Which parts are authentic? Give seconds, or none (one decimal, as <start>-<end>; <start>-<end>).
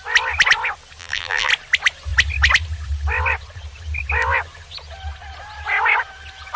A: 0.0-1.0; 1.5-6.6